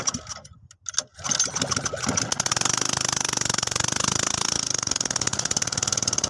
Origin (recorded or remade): recorded